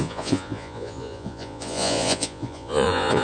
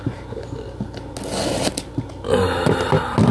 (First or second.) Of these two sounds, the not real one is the first